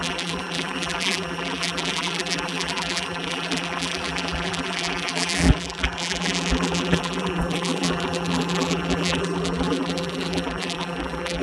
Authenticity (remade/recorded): remade